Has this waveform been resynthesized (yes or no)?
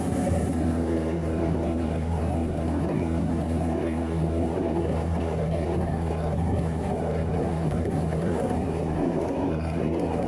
yes